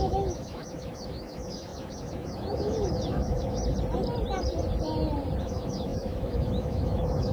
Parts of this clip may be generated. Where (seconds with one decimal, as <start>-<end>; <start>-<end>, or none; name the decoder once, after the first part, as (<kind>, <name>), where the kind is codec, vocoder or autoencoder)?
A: 0.0-3.6 (autoencoder, DAC-VAE); 5.4-7.3